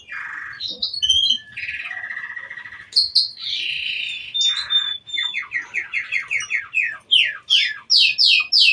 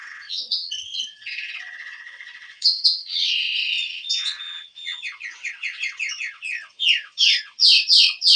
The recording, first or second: first